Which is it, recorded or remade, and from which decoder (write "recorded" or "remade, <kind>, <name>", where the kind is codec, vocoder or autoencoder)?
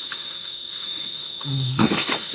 remade, autoencoder, DAC-VAE